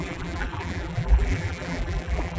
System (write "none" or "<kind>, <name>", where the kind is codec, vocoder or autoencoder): vocoder, BigVGAN v2